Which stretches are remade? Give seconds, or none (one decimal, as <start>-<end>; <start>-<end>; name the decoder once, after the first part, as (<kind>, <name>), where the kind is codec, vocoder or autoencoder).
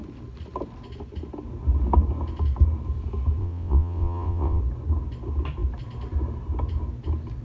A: 3.4-4.6 (vocoder, WaveNeXt)